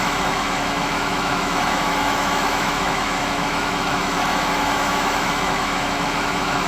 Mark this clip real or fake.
fake